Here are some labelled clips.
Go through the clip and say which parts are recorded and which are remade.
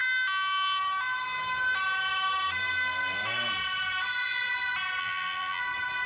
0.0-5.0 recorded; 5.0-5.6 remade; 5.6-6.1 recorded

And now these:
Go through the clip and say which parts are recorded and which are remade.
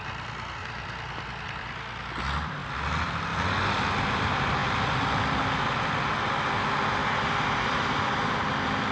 0.0-7.0 recorded; 7.0-8.4 remade; 8.4-8.9 recorded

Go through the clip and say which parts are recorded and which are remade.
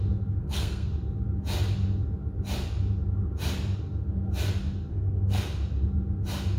0.0-0.4 recorded; 0.4-0.9 remade; 0.9-4.9 recorded; 4.9-5.4 remade; 5.4-6.6 recorded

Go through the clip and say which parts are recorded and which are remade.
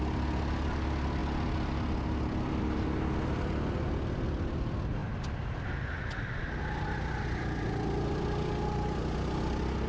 0.0-9.9 recorded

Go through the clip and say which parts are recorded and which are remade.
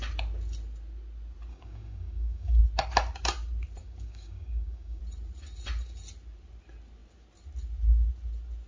0.0-1.5 recorded; 1.5-2.6 remade; 2.6-3.8 recorded; 3.8-5.0 remade; 5.0-8.7 recorded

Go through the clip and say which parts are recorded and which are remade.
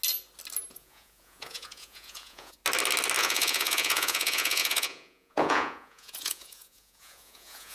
0.0-0.7 recorded; 0.7-2.6 remade; 2.6-3.2 recorded; 3.2-7.7 remade